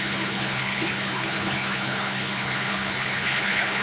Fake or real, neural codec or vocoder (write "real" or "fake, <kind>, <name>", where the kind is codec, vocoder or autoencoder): fake, codec, HILCodec